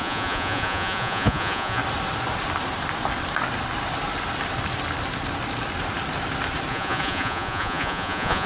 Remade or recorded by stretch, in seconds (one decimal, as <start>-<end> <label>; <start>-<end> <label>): 0.0-1.8 remade; 1.8-6.7 recorded; 6.7-8.5 remade